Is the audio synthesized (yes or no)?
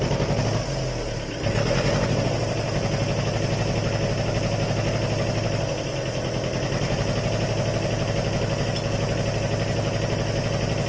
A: no